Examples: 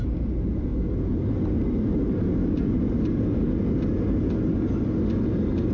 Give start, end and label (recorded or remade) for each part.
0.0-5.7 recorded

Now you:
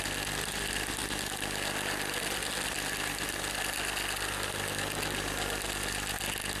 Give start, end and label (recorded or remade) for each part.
0.0-6.6 recorded

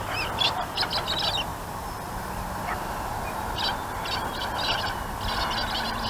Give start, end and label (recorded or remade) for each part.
0.0-6.1 recorded

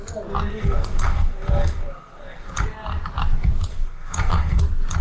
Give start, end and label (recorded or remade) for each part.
0.0-0.5 recorded; 0.5-2.5 remade; 2.5-3.7 recorded; 3.7-4.6 remade; 4.6-5.0 recorded